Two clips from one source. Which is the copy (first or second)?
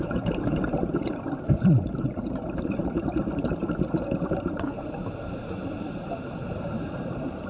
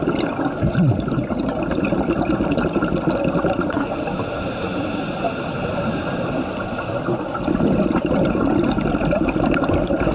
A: first